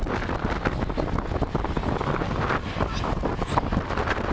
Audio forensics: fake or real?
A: real